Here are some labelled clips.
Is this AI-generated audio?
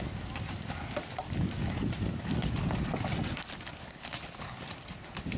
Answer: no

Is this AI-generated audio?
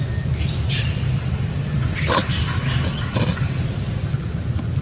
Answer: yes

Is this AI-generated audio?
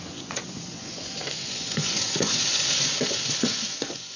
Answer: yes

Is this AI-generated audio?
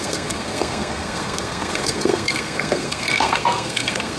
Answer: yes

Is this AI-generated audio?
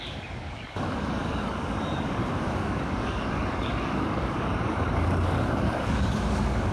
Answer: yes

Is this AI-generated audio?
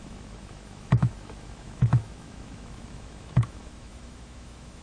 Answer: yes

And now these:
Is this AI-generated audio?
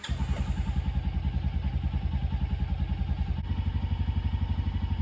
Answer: no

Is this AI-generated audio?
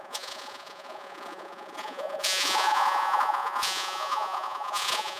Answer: yes